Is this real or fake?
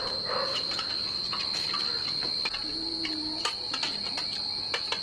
real